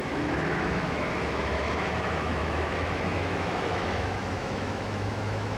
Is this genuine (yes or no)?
no